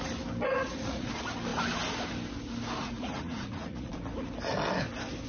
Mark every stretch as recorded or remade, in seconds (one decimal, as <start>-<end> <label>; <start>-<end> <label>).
0.0-0.6 recorded; 0.6-1.1 remade; 1.1-2.8 recorded; 2.8-3.9 remade; 3.9-5.3 recorded

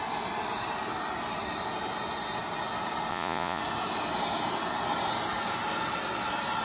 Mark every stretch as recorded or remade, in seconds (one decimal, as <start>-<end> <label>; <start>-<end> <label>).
0.0-3.1 recorded; 3.1-3.6 remade; 3.6-6.6 recorded